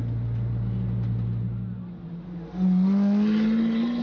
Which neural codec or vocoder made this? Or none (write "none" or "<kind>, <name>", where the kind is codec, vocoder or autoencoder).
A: none